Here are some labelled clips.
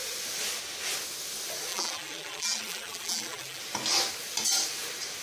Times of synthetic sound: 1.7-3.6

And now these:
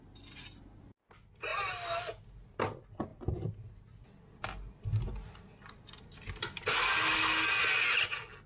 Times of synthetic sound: none

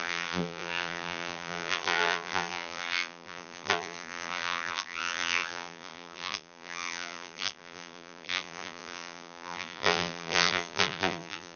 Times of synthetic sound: 0.0-11.6

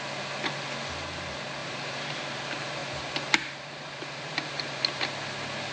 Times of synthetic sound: 1.6-2.1; 2.8-5.0